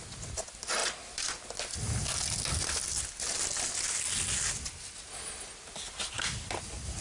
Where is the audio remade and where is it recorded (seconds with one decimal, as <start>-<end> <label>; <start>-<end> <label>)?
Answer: 0.0-7.0 recorded